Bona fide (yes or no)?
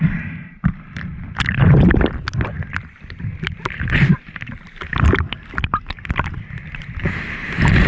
yes